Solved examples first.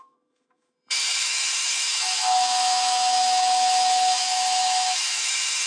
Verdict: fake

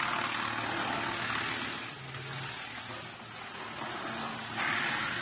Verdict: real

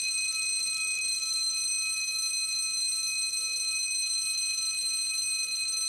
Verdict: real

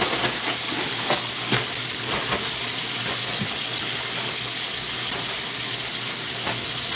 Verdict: real